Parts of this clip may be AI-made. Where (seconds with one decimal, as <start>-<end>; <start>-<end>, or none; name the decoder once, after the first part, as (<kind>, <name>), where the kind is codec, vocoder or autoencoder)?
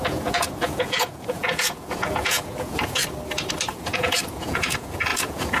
0.0-3.0 (vocoder, Vocos); 3.7-5.6